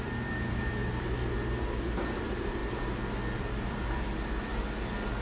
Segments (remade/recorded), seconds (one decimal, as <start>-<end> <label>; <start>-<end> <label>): 0.0-0.8 remade; 0.8-2.2 recorded; 2.2-2.6 remade; 2.6-3.4 recorded; 3.4-4.5 remade; 4.5-5.2 recorded